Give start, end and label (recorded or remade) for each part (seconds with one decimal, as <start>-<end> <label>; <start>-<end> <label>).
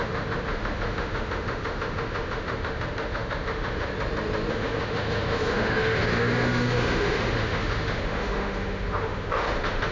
0.0-3.9 remade; 3.9-4.5 recorded; 4.5-9.9 remade